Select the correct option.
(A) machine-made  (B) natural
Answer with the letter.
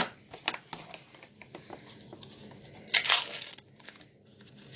B